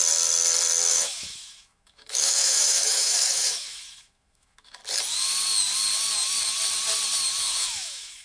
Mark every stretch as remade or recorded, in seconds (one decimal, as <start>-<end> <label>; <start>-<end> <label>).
0.0-0.9 recorded; 0.9-4.8 remade; 4.8-7.4 recorded; 7.4-8.2 remade